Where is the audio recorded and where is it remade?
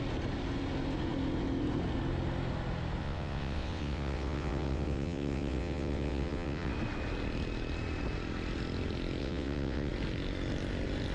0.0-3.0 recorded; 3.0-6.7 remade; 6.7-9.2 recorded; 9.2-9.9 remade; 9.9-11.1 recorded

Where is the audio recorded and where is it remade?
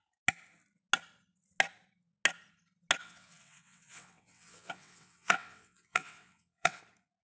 0.0-3.0 recorded; 3.0-6.8 remade; 6.8-7.2 recorded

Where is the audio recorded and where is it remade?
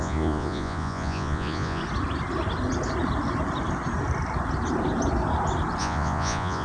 0.0-1.8 remade; 1.8-5.8 recorded; 5.8-6.6 remade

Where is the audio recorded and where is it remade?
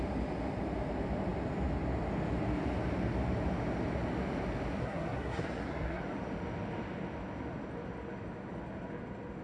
0.0-4.8 recorded; 4.8-6.0 remade; 6.0-9.4 recorded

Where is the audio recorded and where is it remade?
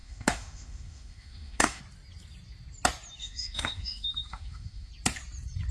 0.0-1.8 remade; 1.8-3.2 recorded; 3.2-4.9 remade; 4.9-5.7 recorded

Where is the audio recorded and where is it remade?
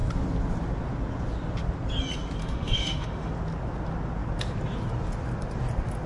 0.0-2.4 recorded; 2.4-3.3 remade; 3.3-6.1 recorded